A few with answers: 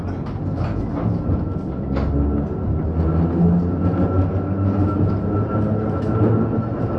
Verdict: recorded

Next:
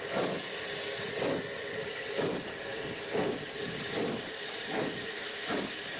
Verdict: recorded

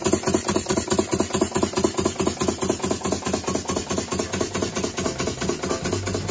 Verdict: recorded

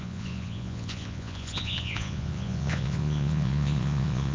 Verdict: remade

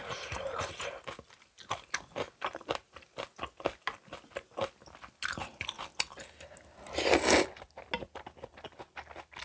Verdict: recorded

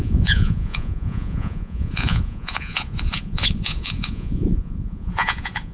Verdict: remade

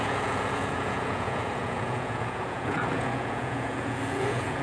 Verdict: remade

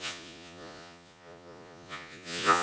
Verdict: remade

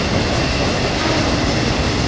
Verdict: recorded